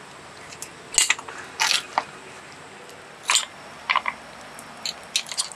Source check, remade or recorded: recorded